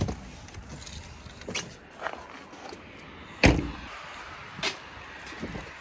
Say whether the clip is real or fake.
real